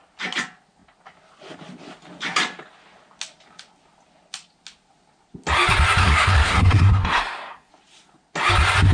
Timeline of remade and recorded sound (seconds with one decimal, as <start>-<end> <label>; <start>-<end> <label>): 0.0-6.0 recorded; 6.0-7.7 remade; 7.7-8.9 recorded